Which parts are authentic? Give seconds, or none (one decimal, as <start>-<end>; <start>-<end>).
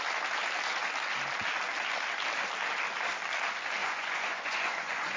0.0-3.8